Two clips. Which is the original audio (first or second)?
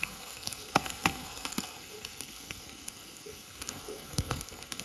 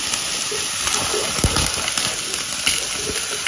second